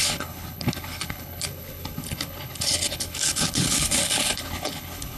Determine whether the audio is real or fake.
fake